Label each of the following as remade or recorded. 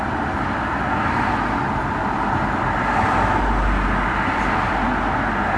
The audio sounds recorded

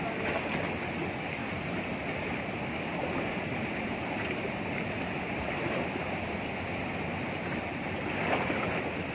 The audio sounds recorded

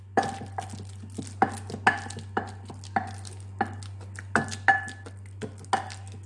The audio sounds recorded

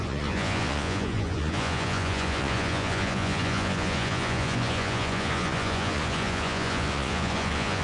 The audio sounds remade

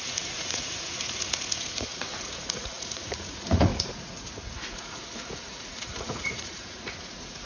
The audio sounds remade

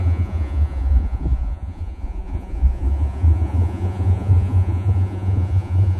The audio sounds remade